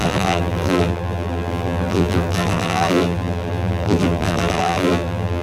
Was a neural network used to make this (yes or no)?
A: yes